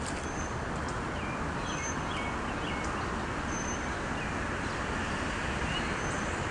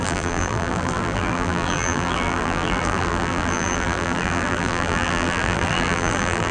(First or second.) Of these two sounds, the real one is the first